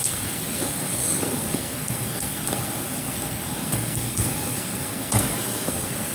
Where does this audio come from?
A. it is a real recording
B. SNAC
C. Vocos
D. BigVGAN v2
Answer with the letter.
B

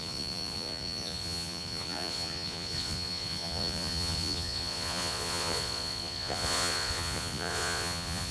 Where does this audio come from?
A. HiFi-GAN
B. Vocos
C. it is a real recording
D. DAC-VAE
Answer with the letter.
B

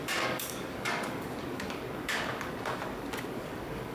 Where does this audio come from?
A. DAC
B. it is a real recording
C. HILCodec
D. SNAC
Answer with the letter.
A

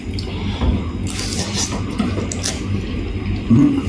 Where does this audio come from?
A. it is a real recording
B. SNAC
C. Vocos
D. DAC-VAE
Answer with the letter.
A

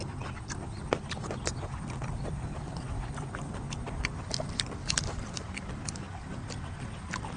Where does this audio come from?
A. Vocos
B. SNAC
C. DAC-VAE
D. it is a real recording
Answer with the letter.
D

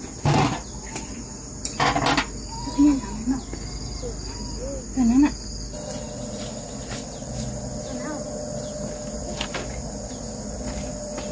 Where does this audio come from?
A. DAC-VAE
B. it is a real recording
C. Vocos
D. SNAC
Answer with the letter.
B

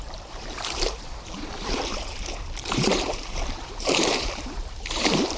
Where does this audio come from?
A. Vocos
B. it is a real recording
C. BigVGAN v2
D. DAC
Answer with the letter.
C